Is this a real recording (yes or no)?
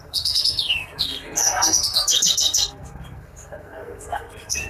no